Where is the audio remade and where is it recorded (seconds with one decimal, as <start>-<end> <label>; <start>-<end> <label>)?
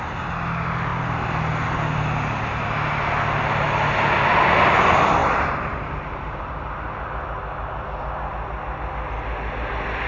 0.0-5.2 recorded; 5.2-6.4 remade; 6.4-10.1 recorded